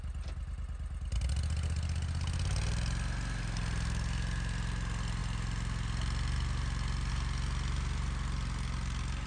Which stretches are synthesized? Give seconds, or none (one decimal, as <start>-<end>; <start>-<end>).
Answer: none